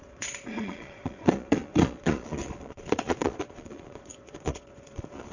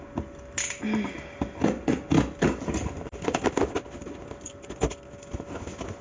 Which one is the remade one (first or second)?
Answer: first